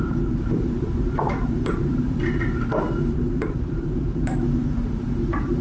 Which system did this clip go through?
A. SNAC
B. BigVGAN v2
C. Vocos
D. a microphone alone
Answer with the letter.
B